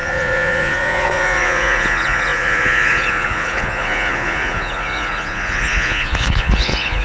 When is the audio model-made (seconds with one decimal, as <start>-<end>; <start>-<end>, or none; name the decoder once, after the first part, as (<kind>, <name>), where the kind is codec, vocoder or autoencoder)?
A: 0.0-7.0 (vocoder, Vocos)